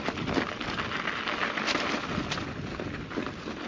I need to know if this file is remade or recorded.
recorded